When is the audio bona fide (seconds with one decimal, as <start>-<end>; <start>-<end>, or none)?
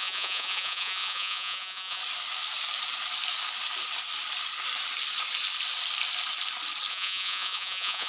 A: 2.0-6.9